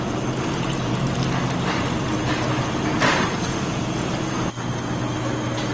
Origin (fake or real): real